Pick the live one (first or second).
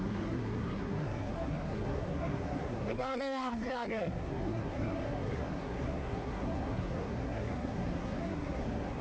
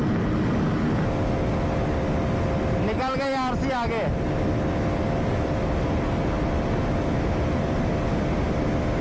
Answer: second